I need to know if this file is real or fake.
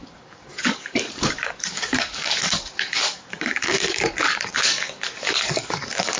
fake